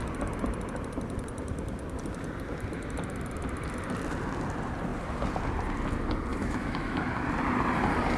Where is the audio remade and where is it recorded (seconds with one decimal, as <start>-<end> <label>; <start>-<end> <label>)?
0.0-6.3 recorded; 6.3-7.0 remade; 7.0-8.2 recorded